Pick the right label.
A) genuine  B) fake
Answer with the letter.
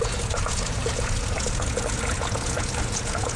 B